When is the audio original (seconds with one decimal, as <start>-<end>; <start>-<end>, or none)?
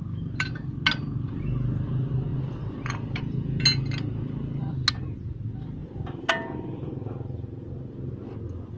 0.0-2.3; 3.2-5.8; 6.3-8.8